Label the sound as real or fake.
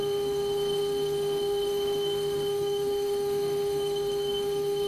fake